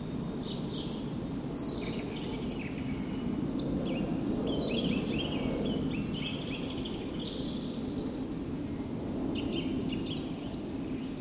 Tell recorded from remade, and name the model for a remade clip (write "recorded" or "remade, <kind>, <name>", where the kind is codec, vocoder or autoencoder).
recorded